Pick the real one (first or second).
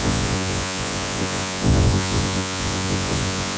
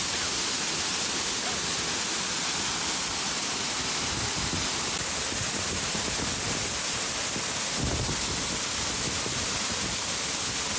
second